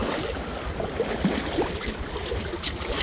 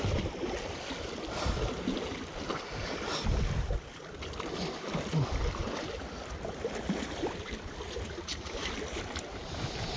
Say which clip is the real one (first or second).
first